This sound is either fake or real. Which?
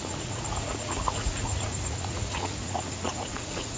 fake